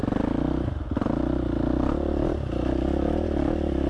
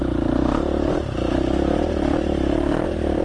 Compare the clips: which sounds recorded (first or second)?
first